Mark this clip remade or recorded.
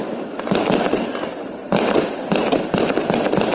remade